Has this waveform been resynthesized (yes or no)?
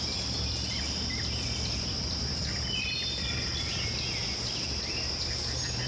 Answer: yes